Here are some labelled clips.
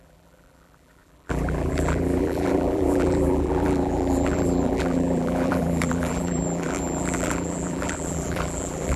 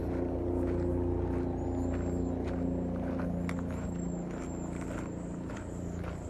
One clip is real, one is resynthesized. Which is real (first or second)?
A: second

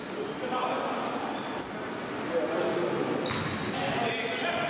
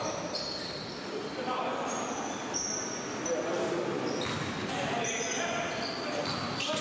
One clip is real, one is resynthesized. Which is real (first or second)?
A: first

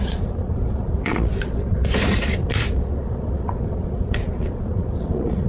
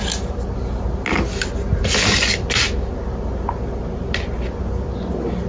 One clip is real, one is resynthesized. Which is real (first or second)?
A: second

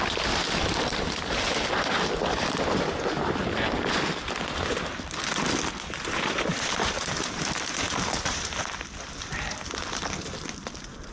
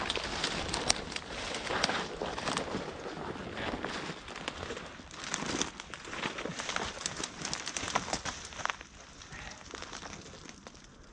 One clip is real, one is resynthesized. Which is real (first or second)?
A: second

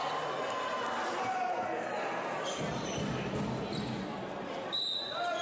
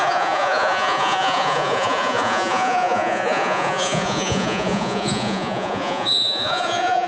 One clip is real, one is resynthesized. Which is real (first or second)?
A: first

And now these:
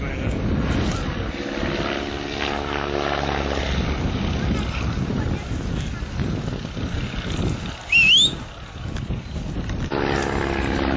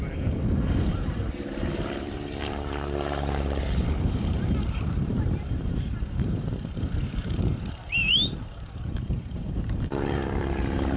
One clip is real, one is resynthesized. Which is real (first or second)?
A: first